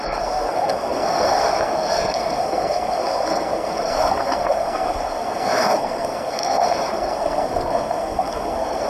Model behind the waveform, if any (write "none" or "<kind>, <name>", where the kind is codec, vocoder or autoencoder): codec, SNAC